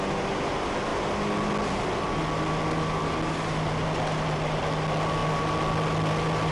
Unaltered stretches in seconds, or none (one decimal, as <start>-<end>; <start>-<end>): 0.0-6.5